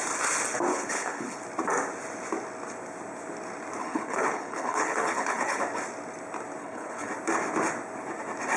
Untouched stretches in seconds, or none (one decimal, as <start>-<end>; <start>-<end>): 0.0-0.7; 1.4-3.8; 5.6-6.6; 7.1-8.6